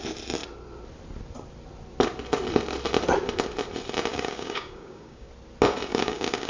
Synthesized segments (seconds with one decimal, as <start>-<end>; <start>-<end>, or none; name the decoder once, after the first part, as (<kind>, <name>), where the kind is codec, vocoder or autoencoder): 4.1-5.3 (codec, DAC); 5.9-6.5